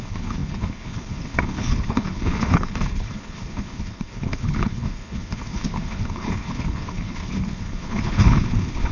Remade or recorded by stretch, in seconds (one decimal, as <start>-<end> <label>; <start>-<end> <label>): 0.0-8.9 remade

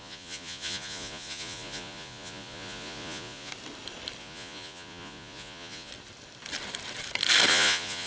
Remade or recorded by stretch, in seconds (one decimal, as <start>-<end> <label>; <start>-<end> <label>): 0.0-3.5 remade; 3.5-4.2 recorded; 4.2-5.9 remade; 5.9-7.5 recorded; 7.5-8.1 remade